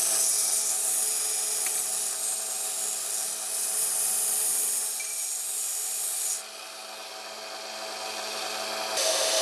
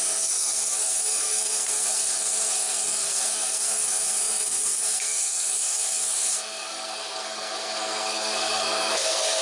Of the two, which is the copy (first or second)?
second